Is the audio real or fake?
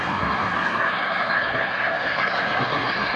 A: fake